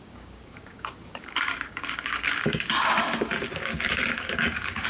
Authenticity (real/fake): fake